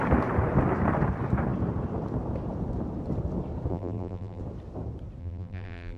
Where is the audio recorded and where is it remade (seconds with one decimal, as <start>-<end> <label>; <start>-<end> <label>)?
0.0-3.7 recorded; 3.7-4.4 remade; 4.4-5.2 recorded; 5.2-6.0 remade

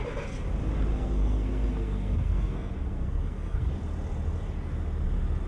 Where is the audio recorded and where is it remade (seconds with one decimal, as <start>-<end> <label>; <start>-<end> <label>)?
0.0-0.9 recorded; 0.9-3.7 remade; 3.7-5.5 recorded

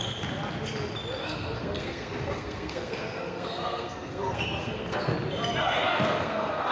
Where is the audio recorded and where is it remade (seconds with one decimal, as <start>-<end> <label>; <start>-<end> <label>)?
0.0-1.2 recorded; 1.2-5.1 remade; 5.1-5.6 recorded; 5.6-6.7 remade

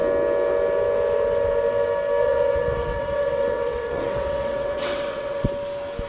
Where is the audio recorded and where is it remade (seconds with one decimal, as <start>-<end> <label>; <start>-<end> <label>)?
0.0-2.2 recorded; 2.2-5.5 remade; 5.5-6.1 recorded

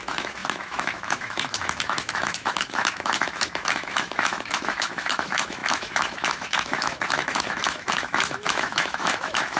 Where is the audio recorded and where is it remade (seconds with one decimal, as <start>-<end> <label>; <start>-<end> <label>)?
0.0-9.6 remade